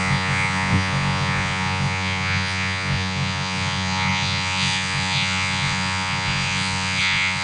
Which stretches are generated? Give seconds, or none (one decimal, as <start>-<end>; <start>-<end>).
0.0-7.4